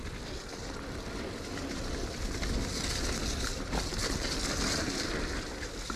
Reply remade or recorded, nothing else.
recorded